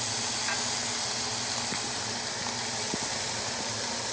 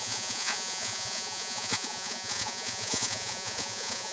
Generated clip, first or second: second